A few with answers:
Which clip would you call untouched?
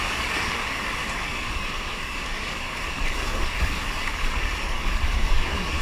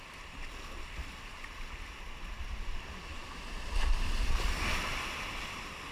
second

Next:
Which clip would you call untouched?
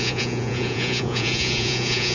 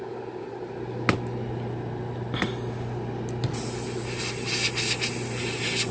second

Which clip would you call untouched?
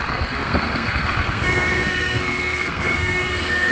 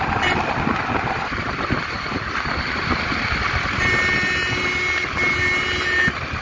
second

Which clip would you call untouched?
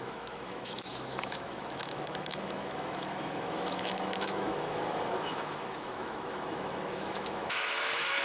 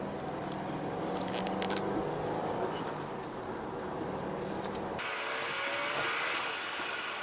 second